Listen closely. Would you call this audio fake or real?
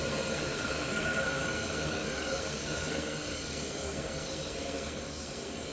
fake